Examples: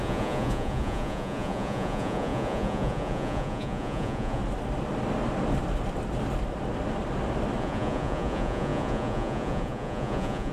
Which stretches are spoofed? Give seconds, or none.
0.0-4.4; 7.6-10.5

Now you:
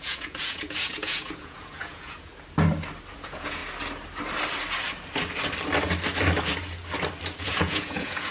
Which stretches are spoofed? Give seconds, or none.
0.0-2.3; 3.1-3.6; 7.4-8.3

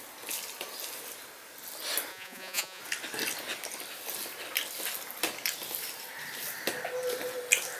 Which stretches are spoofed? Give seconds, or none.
2.1-2.8

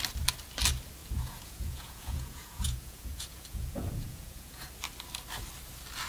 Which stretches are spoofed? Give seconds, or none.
1.0-4.7

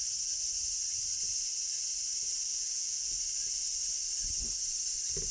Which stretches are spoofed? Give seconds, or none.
2.5-3.1